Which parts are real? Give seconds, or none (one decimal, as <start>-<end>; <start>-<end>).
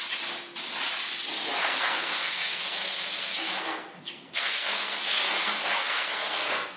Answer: 0.0-1.6